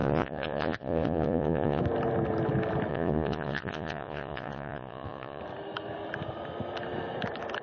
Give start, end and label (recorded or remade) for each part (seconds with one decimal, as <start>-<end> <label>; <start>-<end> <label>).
0.0-1.8 remade; 1.8-2.9 recorded; 2.9-5.4 remade; 5.4-7.6 recorded